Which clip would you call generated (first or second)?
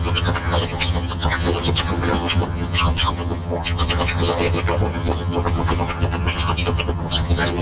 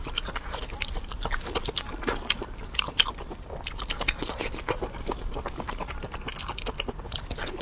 first